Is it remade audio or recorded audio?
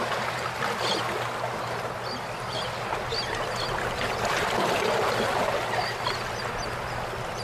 recorded